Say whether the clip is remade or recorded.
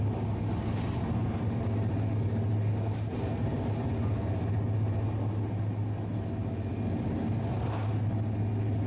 recorded